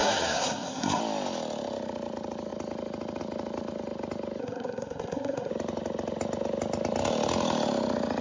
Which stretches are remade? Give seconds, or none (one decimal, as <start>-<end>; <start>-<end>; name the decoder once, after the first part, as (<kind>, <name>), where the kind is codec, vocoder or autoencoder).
0.0-1.0 (codec, SNAC); 4.4-5.5